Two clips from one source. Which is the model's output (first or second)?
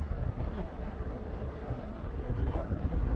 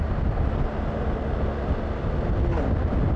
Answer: first